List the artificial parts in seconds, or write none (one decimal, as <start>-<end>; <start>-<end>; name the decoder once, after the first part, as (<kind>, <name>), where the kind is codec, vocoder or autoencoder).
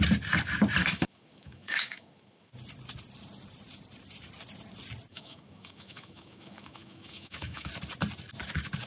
0.8-2.5 (autoencoder, DAC-VAE); 5.1-7.7